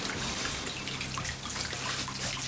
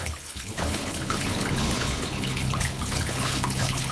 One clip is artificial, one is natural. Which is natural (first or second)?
first